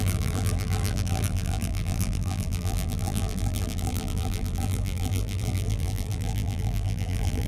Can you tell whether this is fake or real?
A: fake